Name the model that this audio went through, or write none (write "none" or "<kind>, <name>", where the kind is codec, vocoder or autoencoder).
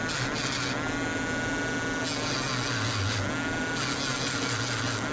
none